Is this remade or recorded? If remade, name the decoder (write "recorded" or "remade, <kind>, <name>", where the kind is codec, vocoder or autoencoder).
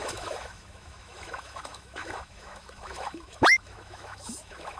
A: remade, autoencoder, DAC-VAE